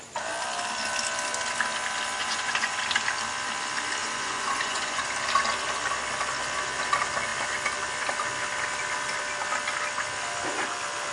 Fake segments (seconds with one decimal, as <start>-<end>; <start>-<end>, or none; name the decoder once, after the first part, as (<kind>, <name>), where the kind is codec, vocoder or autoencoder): 2.2-2.8 (vocoder, Vocos); 4.0-5.0